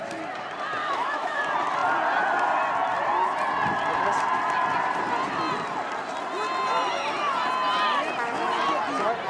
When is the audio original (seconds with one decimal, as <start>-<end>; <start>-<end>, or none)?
0.0-0.8; 1.4-9.3